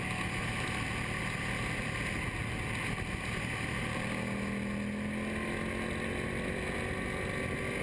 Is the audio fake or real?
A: real